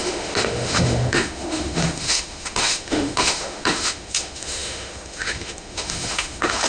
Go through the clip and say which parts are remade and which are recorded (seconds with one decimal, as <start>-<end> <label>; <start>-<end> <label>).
0.0-6.7 remade